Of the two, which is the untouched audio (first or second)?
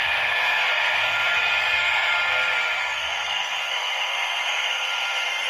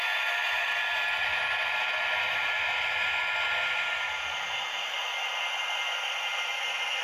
second